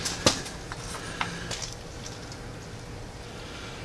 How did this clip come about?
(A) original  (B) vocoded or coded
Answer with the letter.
A